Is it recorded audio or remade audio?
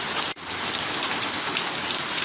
recorded